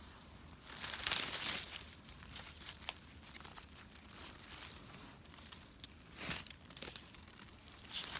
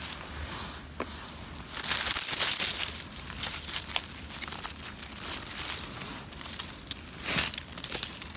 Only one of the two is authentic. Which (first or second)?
second